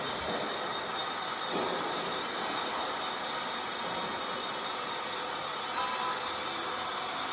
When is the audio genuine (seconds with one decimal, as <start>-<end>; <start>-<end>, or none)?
0.0-7.3